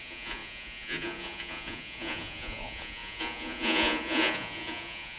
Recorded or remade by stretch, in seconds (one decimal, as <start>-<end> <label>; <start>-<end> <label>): 0.0-5.2 remade